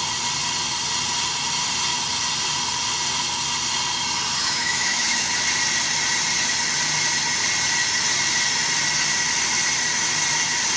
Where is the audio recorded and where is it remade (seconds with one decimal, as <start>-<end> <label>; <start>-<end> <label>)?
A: 0.0-4.4 recorded; 4.4-5.3 remade; 5.3-10.8 recorded